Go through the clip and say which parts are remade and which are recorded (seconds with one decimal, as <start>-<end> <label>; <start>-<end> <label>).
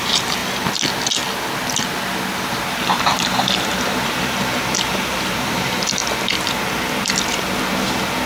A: 0.0-0.4 remade; 0.4-2.7 recorded; 2.7-6.0 remade; 6.0-8.3 recorded